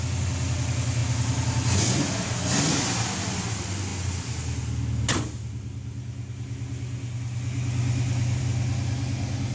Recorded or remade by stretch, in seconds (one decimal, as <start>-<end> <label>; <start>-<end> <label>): 0.0-9.5 recorded